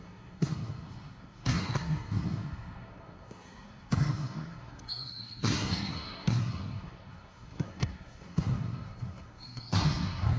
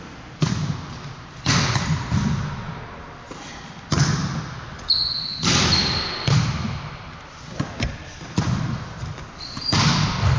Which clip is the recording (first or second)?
second